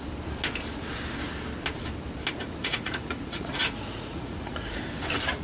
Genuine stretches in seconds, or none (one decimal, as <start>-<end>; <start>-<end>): 0.0-2.6; 4.8-5.4